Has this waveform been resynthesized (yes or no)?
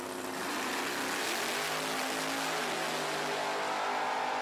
no